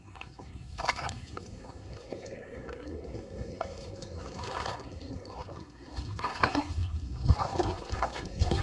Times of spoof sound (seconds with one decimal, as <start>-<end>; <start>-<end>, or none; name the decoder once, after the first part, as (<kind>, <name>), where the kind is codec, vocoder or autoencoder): 0.0-8.6 (codec, SNAC)